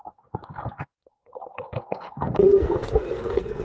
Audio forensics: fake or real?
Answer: fake